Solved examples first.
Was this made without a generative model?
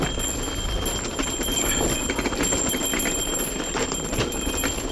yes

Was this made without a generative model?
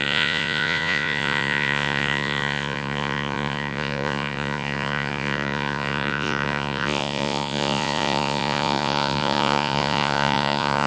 no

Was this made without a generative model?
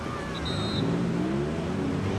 yes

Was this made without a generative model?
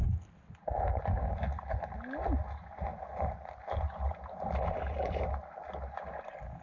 yes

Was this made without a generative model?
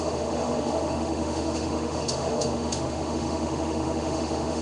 no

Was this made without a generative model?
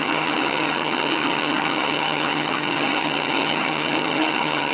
no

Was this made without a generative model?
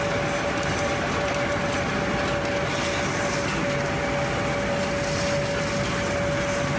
yes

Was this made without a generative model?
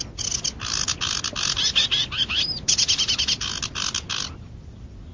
yes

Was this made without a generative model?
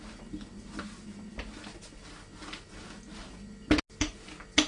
yes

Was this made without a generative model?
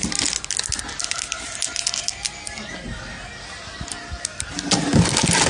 yes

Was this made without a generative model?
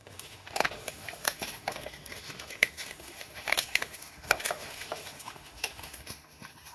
no